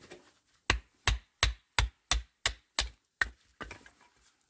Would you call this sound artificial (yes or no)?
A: no